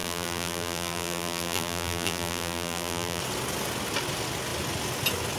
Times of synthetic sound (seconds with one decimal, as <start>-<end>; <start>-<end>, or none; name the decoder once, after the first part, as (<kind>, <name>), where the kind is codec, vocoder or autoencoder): 0.0-3.2 (vocoder, BigVGAN v2)